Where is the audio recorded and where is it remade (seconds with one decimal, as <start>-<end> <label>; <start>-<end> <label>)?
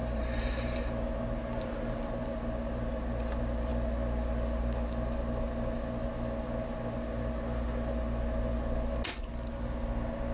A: 0.0-0.9 remade; 0.9-10.3 recorded